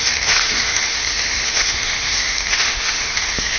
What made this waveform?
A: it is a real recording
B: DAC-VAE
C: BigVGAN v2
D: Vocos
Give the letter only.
B